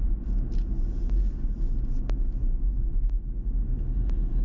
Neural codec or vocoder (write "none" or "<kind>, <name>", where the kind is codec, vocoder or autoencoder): none